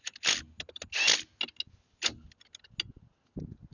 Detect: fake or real real